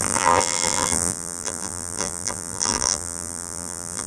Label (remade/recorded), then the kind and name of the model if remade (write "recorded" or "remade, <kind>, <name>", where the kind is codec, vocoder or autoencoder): remade, vocoder, BigVGAN v2